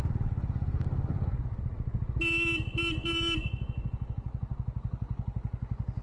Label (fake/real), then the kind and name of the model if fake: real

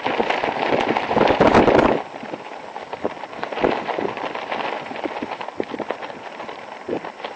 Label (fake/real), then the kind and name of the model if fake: real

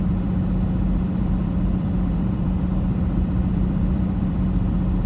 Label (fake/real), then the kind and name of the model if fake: fake, vocoder, BigVGAN v2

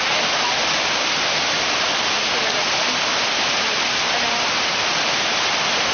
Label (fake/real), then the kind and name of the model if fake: real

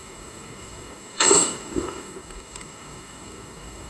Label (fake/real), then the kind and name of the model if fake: fake, codec, DAC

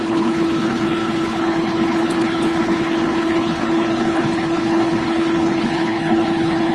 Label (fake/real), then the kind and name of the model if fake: fake, codec, HILCodec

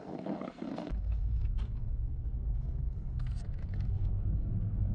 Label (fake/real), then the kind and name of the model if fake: fake, codec, SNAC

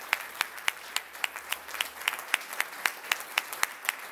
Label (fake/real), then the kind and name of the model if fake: fake, vocoder, BigVGAN v2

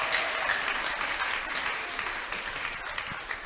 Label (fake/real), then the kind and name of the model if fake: real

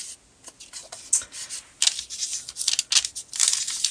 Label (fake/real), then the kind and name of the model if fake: real